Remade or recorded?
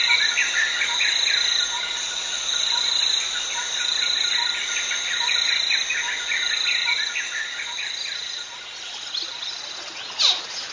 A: recorded